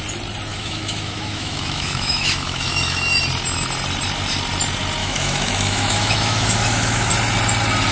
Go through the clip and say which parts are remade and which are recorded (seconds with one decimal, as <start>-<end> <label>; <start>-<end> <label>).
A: 0.0-0.5 recorded; 0.5-3.2 remade; 3.2-5.0 recorded; 5.0-7.1 remade; 7.1-7.9 recorded